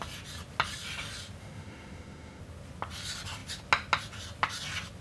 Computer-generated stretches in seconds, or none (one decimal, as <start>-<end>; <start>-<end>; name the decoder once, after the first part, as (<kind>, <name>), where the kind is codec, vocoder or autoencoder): 1.4-2.4 (autoencoder, DAC-VAE)

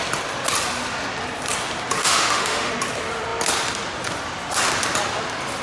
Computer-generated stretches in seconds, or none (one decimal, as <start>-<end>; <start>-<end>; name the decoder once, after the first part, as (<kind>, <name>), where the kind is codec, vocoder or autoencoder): 2.0-2.7 (autoencoder, DAC-VAE)

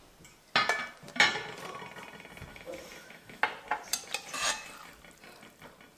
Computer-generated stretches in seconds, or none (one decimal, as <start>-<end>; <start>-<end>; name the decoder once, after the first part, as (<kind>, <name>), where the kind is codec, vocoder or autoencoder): 2.5-3.4 (autoencoder, DAC-VAE)

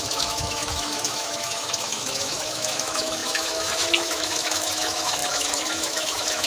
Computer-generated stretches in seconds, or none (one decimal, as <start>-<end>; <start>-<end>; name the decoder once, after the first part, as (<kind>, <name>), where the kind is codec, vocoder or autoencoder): 0.0-6.5 (autoencoder, DAC-VAE)

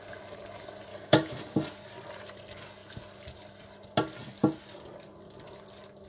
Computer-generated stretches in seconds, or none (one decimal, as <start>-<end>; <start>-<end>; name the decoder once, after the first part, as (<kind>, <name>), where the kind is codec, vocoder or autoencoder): 0.9-1.4 (autoencoder, DAC-VAE)